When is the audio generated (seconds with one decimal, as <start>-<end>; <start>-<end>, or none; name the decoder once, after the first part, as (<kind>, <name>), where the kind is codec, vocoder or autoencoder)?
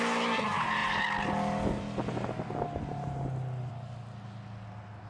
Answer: none